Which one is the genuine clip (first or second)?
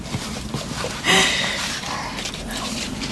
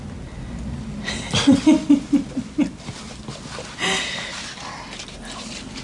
second